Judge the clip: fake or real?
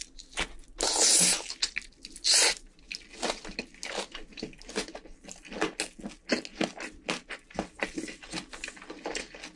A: real